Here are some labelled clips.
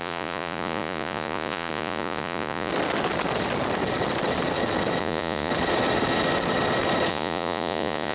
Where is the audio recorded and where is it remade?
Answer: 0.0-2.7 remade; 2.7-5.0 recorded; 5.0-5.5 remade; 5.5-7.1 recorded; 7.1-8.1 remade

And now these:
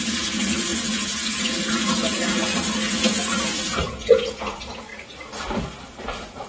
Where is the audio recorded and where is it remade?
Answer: 0.0-4.9 remade; 4.9-6.0 recorded; 6.0-6.5 remade

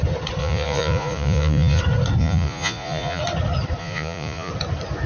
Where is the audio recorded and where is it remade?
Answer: 0.0-0.4 recorded; 0.4-1.8 remade; 1.8-2.2 recorded; 2.2-3.2 remade; 3.2-3.8 recorded; 3.8-4.5 remade; 4.5-5.1 recorded

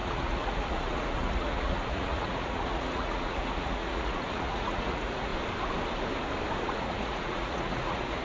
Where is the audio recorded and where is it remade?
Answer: 0.0-5.3 remade; 5.3-6.6 recorded; 6.6-8.2 remade